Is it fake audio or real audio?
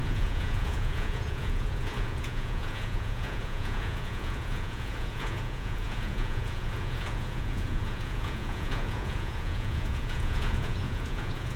fake